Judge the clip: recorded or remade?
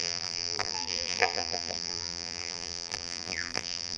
remade